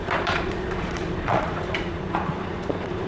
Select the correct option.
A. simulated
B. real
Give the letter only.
A